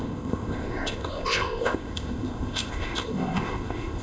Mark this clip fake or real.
fake